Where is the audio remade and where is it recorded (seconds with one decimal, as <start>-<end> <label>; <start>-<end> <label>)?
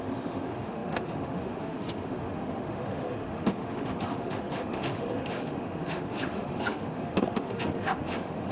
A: 0.0-8.5 remade